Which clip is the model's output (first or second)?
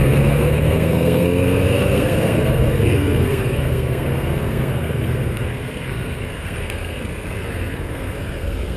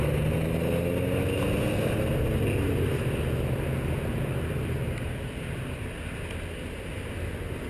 first